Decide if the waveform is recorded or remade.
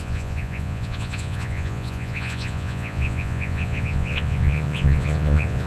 remade